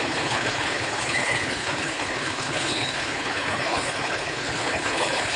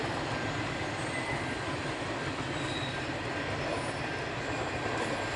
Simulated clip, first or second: first